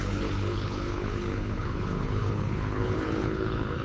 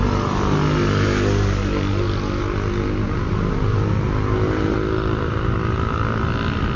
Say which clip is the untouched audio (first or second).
second